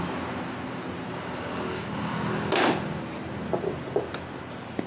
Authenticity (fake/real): real